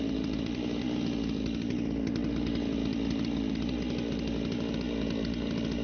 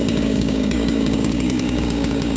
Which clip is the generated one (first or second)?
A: second